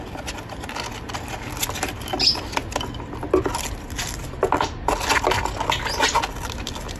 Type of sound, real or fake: real